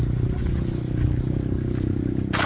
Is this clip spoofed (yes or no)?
no